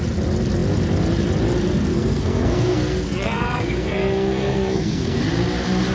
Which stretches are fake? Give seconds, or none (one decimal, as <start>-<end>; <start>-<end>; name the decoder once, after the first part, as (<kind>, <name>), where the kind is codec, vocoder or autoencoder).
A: 1.9-5.2 (codec, SNAC)